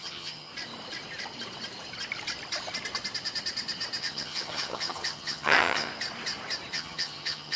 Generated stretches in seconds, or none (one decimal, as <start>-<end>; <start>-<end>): 0.0-0.5; 4.0-5.9; 6.7-7.6